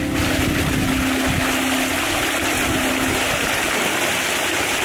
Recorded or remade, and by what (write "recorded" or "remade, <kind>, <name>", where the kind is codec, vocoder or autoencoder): recorded